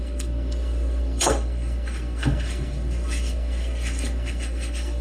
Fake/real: fake